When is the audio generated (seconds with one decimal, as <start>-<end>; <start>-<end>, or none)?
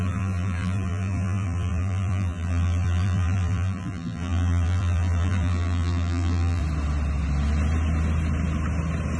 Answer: 0.0-6.6